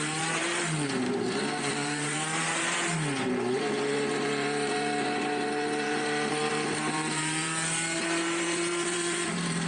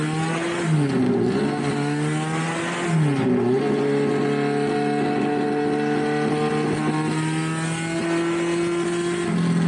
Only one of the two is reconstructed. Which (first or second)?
first